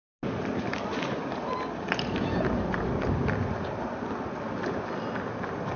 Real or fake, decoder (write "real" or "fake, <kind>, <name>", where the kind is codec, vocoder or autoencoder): real